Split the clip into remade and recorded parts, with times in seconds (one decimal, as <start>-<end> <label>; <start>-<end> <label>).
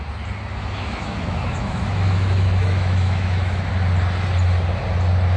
0.0-0.5 recorded; 0.5-3.7 remade; 3.7-5.4 recorded